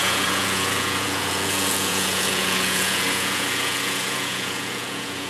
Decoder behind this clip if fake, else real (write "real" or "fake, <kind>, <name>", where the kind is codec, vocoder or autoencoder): fake, vocoder, Vocos